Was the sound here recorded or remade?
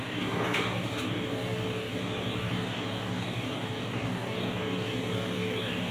remade